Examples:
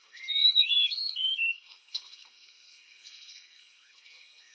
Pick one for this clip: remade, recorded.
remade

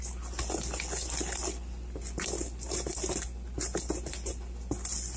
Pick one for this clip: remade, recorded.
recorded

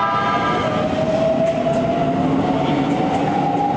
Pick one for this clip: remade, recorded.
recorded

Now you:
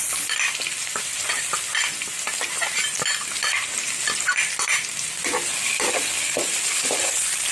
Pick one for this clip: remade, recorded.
recorded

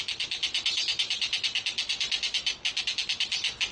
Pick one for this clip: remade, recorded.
recorded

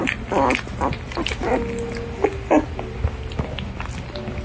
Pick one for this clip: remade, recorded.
recorded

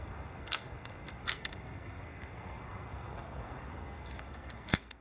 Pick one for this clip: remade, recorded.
remade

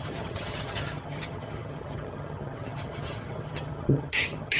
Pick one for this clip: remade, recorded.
remade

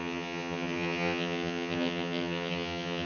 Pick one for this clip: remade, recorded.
remade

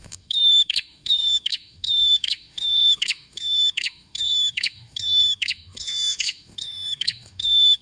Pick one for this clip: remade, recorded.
remade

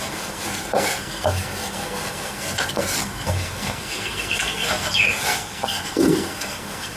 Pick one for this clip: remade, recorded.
remade